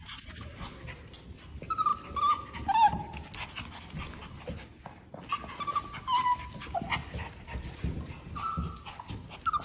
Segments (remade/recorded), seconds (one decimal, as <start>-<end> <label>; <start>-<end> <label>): 0.0-9.6 recorded